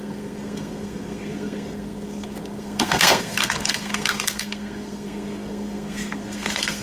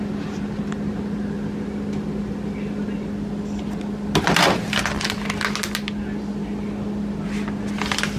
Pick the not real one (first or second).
first